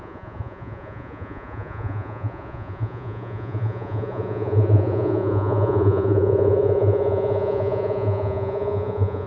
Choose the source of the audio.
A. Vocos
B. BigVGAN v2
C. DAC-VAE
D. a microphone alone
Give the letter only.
A